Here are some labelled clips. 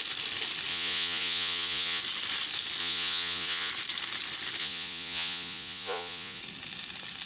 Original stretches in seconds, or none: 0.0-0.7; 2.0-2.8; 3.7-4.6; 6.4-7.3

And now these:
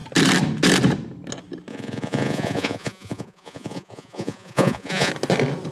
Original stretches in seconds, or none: 0.0-1.7; 5.1-5.7